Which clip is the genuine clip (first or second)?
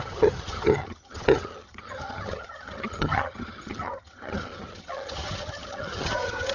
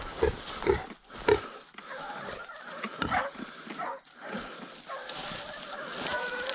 second